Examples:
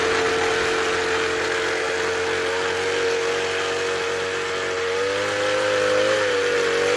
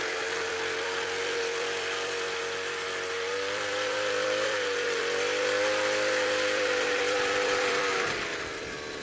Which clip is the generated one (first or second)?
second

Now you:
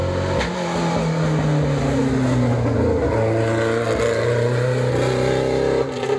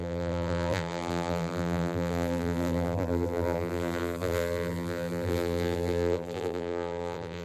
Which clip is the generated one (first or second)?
second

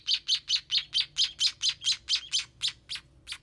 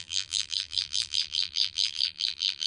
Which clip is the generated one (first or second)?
second